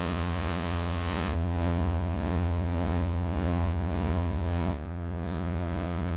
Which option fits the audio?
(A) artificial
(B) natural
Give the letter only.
A